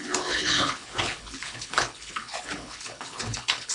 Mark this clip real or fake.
fake